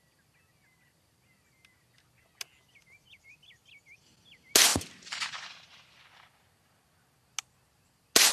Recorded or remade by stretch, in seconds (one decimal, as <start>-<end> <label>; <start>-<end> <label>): 0.0-8.3 recorded